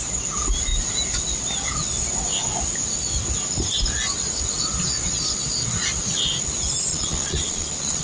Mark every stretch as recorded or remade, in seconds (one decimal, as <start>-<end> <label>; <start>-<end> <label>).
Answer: 0.0-6.9 recorded; 6.9-8.0 remade